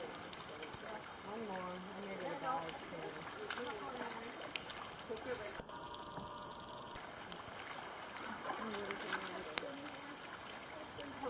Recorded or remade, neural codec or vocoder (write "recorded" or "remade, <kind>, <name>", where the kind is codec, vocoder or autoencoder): recorded